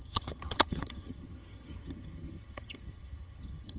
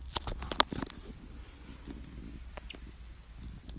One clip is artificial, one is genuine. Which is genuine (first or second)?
second